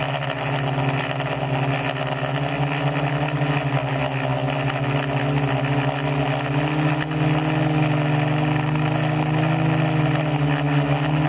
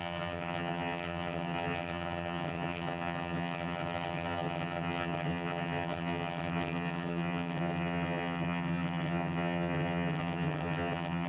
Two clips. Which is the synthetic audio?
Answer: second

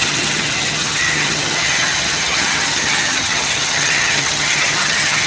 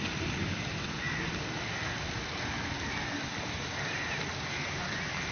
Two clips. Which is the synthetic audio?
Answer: first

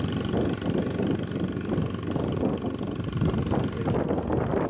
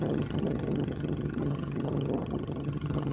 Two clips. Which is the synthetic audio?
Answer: second